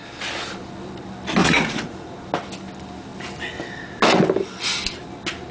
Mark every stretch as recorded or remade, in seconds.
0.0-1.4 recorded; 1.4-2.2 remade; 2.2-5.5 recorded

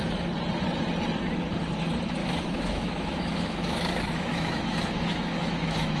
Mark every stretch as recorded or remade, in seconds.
0.0-2.2 recorded; 2.2-6.0 remade

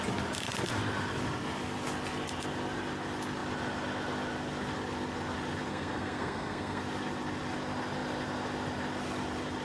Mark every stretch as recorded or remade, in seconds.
0.0-5.7 recorded; 5.7-6.8 remade; 6.8-9.6 recorded

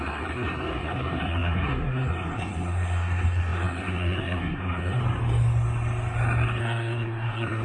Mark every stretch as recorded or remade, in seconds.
0.0-5.0 remade; 5.0-6.6 recorded; 6.6-7.6 remade

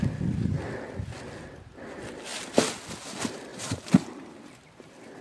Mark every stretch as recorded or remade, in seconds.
0.0-3.5 recorded; 3.5-4.3 remade; 4.3-5.2 recorded

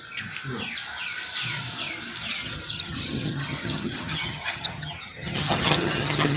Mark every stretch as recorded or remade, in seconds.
0.0-2.4 recorded; 2.4-6.4 remade

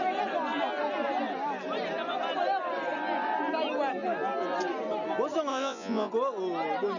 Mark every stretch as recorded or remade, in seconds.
0.0-5.5 recorded; 5.5-6.1 remade; 6.1-7.0 recorded

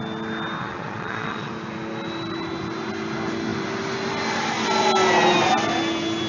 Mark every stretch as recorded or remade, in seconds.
0.0-0.6 recorded; 0.6-1.5 remade; 1.5-6.3 recorded